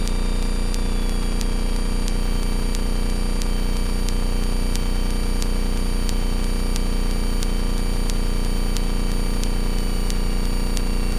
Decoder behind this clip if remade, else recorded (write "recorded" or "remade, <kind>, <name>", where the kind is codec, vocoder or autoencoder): recorded